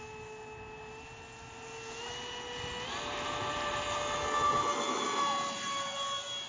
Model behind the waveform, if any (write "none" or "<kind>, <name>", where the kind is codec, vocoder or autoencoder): none